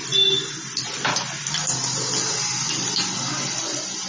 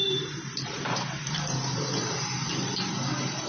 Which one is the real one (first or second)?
first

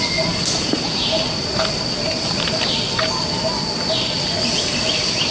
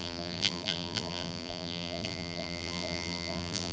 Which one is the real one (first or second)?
first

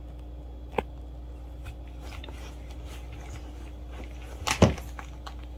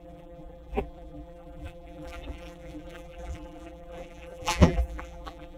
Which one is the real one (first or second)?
first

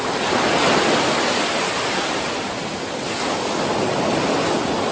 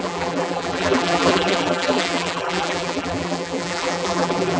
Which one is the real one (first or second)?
first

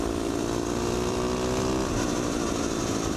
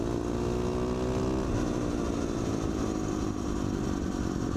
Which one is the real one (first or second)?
second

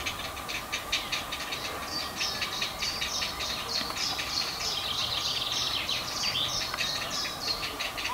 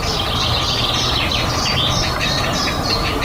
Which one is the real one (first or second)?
second